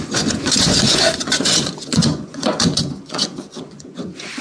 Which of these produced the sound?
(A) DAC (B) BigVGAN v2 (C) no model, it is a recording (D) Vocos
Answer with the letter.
D